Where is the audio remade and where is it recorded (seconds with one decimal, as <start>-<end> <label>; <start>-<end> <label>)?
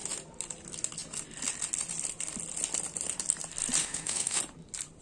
0.0-3.8 recorded; 3.8-4.4 remade; 4.4-5.0 recorded